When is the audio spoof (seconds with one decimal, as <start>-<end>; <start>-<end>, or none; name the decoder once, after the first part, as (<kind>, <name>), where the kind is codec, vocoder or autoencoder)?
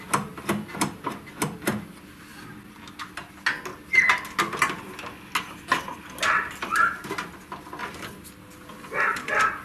none